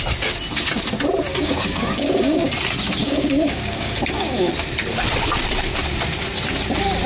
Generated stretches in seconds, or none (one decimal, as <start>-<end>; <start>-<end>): 1.3-2.4; 3.0-4.5